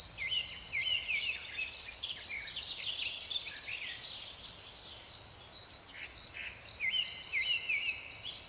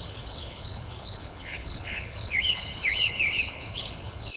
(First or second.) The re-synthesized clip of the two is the second